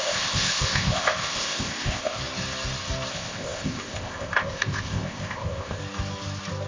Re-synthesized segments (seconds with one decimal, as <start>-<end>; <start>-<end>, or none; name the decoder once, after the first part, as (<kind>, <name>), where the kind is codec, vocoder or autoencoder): 0.0-2.2 (codec, ZipCodec); 3.1-5.8